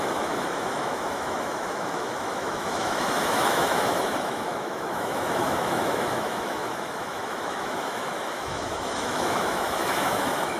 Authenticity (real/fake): fake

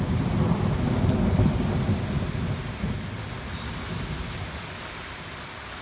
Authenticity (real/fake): real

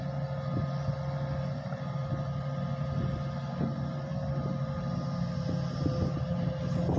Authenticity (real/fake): real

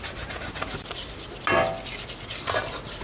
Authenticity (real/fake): real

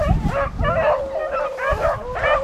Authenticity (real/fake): real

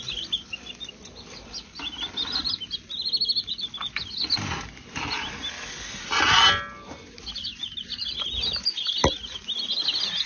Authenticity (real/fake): real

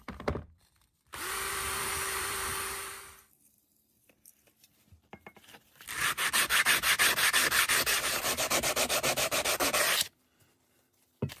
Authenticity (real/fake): fake